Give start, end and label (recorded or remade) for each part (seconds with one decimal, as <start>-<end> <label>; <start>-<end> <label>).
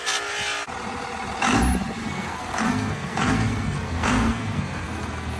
0.0-2.0 recorded; 2.0-5.4 remade